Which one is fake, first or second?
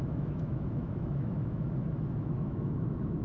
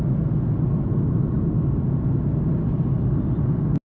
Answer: first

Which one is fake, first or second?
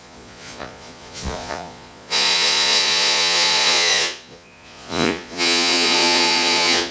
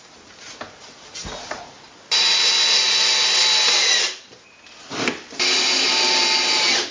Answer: first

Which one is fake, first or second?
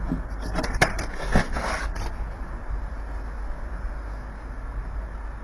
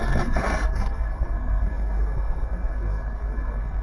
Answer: second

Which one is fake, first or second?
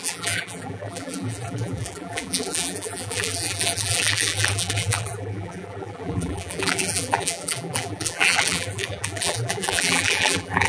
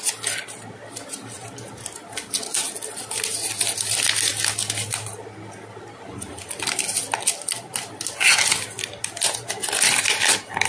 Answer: first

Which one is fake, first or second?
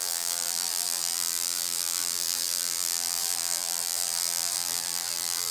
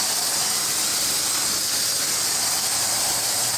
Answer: first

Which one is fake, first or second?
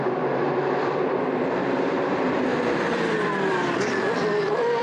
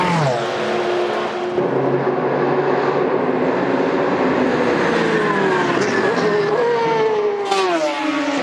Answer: first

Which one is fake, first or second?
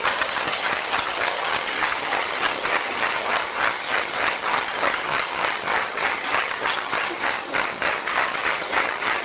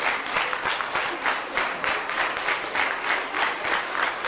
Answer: first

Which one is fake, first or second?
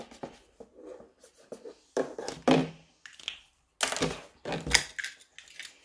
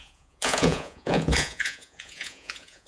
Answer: second